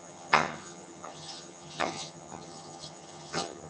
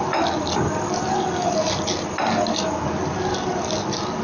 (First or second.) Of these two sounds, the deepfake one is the first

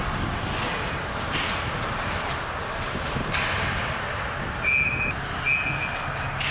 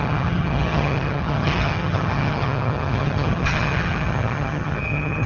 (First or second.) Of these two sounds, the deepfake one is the second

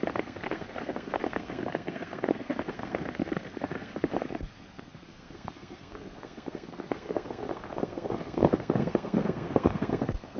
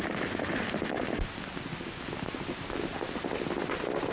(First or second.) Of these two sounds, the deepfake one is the first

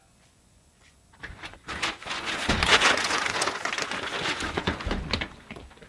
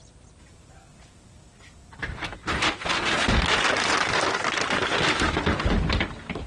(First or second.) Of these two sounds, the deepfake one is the first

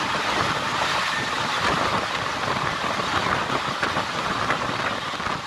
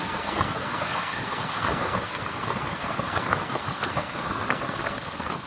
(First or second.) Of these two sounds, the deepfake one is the second